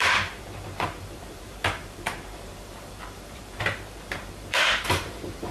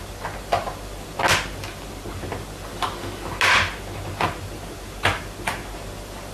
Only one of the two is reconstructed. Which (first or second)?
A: first